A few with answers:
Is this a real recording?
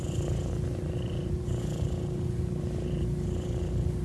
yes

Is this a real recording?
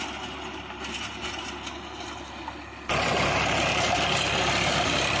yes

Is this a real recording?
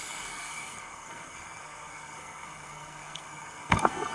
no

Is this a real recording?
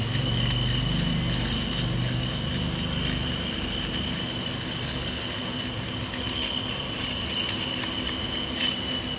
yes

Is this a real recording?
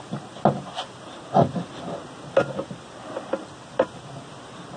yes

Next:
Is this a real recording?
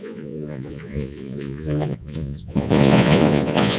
no